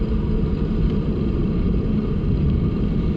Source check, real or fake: fake